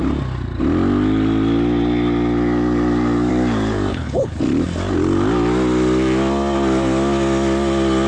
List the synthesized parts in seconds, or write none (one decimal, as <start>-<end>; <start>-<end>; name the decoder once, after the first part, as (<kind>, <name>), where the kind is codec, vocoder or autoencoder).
3.9-4.4 (codec, HILCodec)